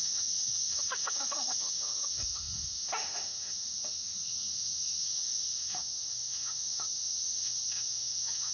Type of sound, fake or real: fake